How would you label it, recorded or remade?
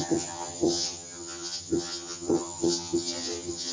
remade